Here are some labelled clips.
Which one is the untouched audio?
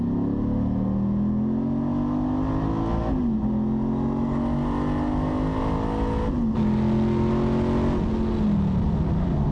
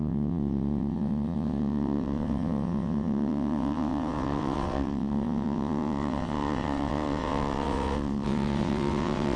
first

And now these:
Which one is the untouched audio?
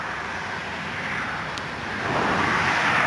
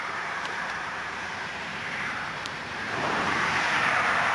first